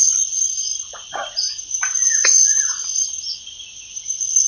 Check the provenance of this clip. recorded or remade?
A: recorded